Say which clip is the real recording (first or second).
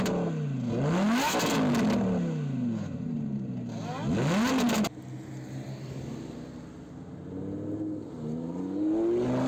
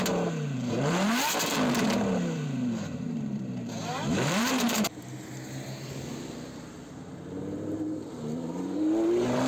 first